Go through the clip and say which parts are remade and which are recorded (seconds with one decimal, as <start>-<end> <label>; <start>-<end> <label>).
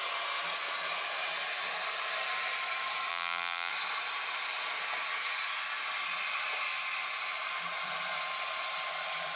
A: 0.0-3.1 recorded; 3.1-3.7 remade; 3.7-9.4 recorded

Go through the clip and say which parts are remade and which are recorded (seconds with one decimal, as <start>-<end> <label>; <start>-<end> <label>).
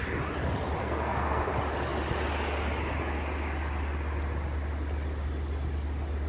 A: 0.0-0.8 recorded; 0.8-1.5 remade; 1.5-6.3 recorded